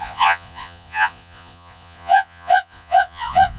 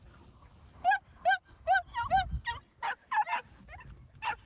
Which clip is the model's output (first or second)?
first